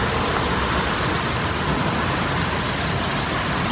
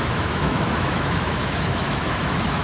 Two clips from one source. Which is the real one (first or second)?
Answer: first